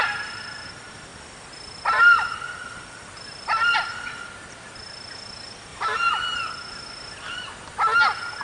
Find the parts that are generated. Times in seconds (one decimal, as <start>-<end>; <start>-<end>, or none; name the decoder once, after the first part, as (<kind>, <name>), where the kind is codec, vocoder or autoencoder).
none